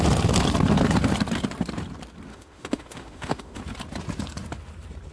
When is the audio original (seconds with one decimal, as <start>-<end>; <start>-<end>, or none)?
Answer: 0.0-2.3; 3.6-5.1